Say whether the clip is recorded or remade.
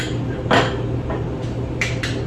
recorded